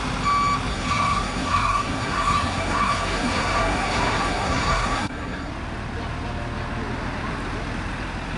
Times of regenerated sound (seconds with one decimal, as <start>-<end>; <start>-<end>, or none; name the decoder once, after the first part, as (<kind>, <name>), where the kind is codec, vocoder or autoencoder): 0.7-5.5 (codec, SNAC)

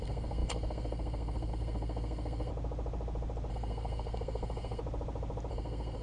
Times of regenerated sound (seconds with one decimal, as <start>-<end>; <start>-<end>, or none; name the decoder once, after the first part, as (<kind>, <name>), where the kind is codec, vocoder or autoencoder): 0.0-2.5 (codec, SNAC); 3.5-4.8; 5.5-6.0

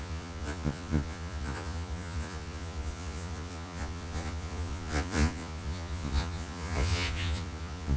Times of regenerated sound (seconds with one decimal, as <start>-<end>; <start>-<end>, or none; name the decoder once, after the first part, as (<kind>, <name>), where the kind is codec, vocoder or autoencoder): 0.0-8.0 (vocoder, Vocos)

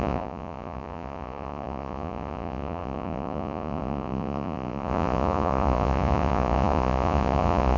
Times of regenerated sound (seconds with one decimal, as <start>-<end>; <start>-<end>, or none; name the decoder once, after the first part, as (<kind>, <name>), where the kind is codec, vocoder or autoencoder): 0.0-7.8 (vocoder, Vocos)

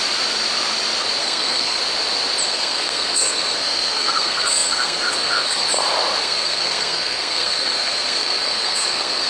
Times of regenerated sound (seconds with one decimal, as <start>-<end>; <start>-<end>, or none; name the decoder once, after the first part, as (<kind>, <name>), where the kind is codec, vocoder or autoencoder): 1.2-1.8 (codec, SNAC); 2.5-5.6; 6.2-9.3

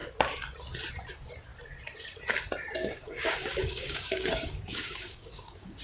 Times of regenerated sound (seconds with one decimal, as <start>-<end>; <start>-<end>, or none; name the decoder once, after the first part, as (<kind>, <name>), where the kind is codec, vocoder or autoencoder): 2.8-5.8 (codec, DAC)

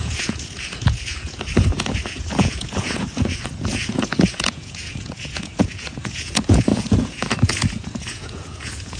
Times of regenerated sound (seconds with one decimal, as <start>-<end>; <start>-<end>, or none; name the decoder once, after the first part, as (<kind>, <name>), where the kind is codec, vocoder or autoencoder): 0.0-9.0 (vocoder, Vocos)

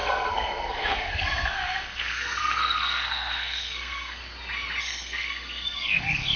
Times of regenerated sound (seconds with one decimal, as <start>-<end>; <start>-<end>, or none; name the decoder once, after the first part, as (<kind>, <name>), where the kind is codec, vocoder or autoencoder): 0.0-4.2 (codec, SNAC); 4.8-6.4